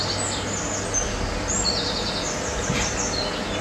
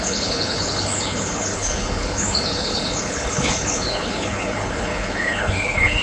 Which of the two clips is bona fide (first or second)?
first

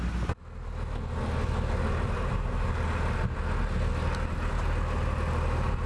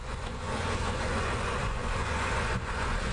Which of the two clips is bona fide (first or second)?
first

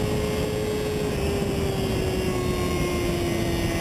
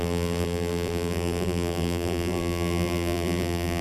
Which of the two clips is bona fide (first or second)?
first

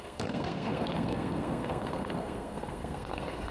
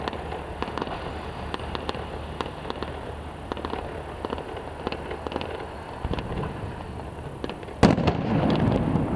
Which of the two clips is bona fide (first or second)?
second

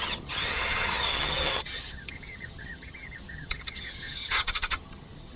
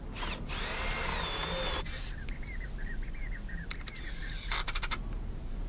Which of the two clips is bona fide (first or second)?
second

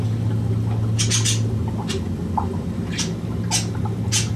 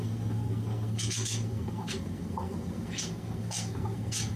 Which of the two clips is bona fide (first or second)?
first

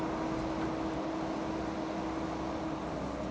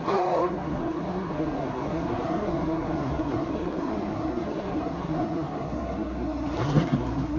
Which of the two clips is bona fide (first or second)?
first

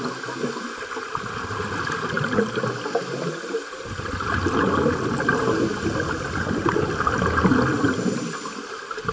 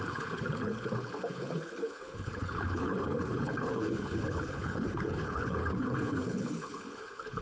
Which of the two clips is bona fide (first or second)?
first